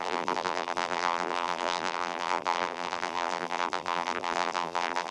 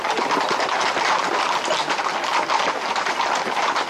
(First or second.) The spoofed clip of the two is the first